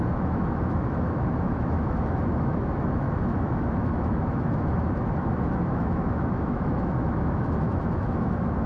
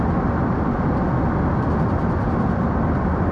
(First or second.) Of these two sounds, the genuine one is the second